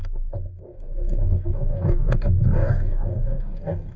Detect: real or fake fake